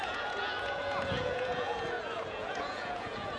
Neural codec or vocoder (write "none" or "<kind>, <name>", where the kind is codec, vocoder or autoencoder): vocoder, Vocos